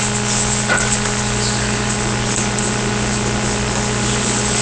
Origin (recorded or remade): recorded